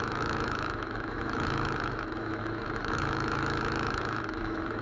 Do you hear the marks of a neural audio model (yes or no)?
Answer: yes